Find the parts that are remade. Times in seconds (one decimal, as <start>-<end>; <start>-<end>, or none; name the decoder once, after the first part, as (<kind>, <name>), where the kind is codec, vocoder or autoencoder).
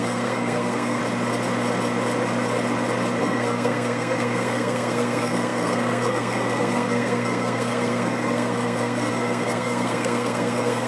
0.0-1.0 (codec, SNAC); 3.2-10.9